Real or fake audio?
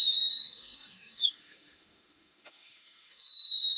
fake